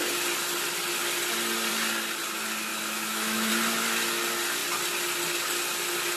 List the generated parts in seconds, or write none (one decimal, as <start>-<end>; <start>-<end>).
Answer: 2.7-3.5